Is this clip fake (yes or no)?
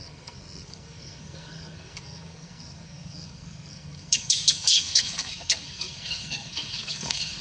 yes